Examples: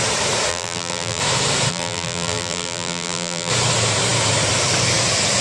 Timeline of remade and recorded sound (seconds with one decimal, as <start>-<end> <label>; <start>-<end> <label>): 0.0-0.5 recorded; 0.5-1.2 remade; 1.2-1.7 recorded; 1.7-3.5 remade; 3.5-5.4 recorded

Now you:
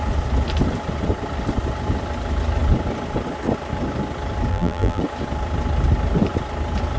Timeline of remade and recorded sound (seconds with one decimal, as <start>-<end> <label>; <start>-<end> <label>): 0.0-4.5 recorded; 4.5-5.0 remade; 5.0-7.0 recorded

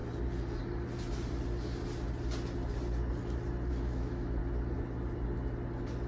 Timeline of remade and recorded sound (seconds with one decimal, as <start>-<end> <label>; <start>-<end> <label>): 0.0-3.7 recorded; 3.7-4.4 remade; 4.4-6.1 recorded

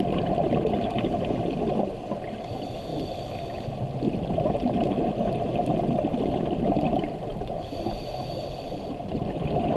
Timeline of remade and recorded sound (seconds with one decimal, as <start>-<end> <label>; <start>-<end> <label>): 0.0-9.8 recorded

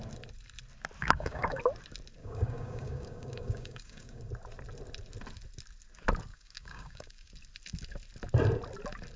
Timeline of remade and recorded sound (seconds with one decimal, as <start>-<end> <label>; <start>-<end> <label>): 0.0-1.0 recorded; 1.0-1.6 remade; 1.6-2.2 recorded; 2.2-4.3 remade; 4.3-6.3 recorded; 6.3-7.3 remade; 7.3-9.2 recorded